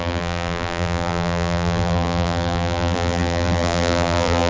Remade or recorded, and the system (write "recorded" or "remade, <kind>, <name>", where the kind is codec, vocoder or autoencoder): remade, vocoder, BigVGAN v2